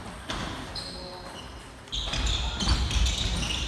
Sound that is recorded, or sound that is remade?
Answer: recorded